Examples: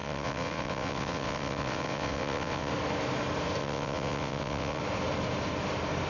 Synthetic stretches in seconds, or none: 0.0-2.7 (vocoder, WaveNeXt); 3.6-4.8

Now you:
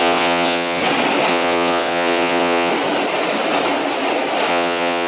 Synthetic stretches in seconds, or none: 0.0-0.8 (vocoder, WaveNeXt); 1.3-2.7; 4.5-5.1

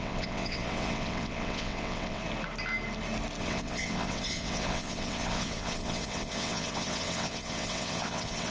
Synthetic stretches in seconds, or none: 0.0-2.2 (vocoder, WaveNeXt); 3.4-8.5

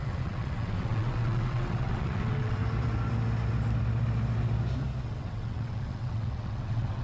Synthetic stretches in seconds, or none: 0.0-2.6 (vocoder, WaveNeXt); 5.0-7.0

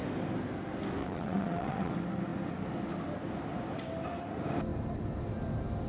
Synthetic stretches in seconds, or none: 1.0-1.9 (vocoder, WaveNeXt)

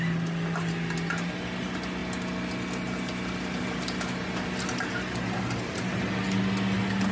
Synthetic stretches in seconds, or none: none